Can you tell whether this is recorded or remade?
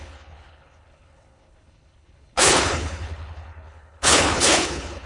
remade